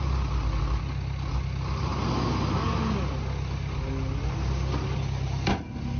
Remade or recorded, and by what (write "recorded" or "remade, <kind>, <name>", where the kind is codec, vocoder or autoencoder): recorded